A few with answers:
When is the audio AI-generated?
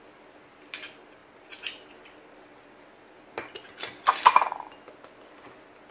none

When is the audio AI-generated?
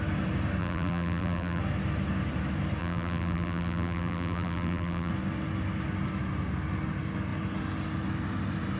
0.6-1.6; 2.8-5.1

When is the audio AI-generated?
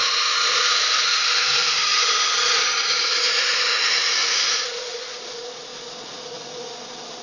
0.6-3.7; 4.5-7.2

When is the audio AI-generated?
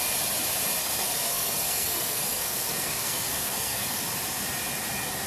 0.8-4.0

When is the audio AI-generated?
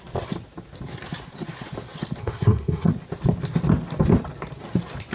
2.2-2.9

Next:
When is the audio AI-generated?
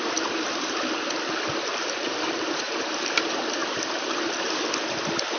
1.7-2.7; 3.6-4.5